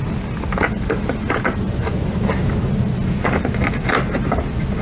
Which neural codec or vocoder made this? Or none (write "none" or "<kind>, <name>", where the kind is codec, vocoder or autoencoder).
none